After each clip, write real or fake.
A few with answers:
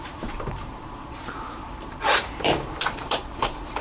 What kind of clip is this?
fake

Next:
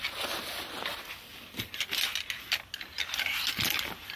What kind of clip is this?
real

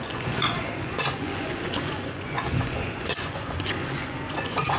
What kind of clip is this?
fake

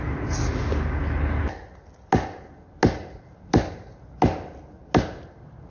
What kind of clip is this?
real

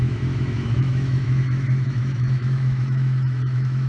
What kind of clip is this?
fake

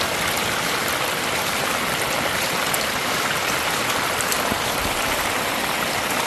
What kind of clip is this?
real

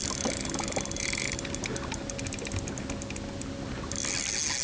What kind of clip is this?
real